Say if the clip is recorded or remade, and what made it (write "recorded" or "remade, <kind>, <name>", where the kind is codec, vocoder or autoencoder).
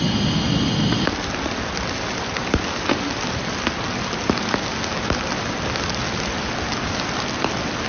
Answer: recorded